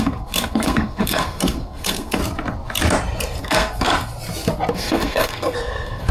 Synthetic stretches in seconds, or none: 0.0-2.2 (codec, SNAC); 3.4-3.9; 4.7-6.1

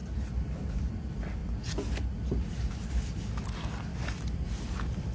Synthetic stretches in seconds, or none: 0.0-0.8 (vocoder, BigVGAN v2); 3.9-5.1

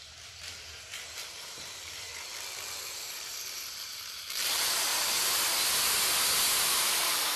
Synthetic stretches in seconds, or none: 0.0-2.1 (vocoder, BigVGAN v2); 2.8-4.9; 6.6-7.4

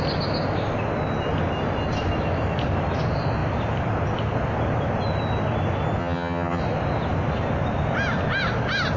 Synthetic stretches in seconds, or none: 6.0-6.6 (vocoder, HiFi-GAN)